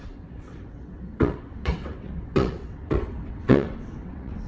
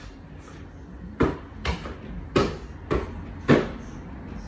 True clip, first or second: second